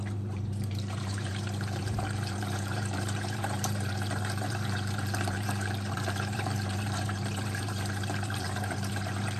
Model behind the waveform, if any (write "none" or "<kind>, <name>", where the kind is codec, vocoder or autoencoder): vocoder, BigVGAN v2